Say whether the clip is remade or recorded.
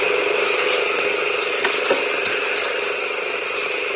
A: recorded